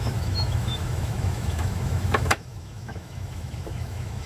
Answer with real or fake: fake